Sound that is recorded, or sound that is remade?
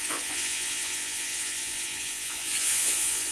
remade